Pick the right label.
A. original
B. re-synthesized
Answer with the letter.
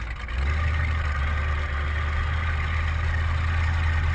A